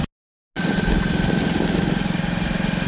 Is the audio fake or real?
real